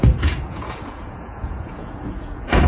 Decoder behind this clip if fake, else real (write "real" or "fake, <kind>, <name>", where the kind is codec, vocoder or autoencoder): fake, vocoder, Vocos